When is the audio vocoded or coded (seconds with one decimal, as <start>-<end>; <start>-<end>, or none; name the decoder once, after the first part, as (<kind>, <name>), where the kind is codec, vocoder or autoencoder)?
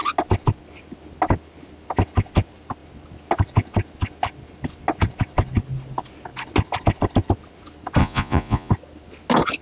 8.0-8.7 (vocoder, Vocos)